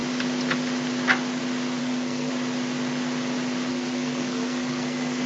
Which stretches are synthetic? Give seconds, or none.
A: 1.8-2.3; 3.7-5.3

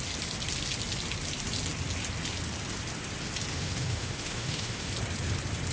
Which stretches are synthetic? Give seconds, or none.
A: 3.5-4.9

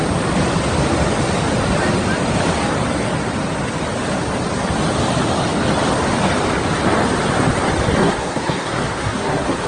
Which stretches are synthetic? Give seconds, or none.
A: 8.0-9.7

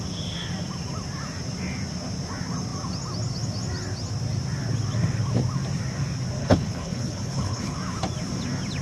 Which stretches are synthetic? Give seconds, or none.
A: 6.4-7.8

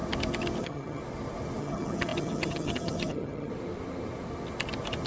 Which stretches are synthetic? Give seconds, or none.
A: 0.6-1.0; 1.6-3.5